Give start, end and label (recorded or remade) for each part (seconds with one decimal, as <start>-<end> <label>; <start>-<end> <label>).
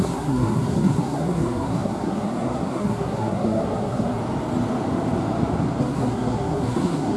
0.0-4.2 remade; 4.2-5.8 recorded; 5.8-7.2 remade